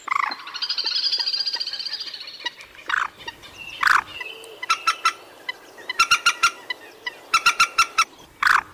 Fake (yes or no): no